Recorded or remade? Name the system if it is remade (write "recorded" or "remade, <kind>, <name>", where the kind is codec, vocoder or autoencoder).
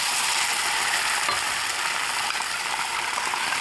recorded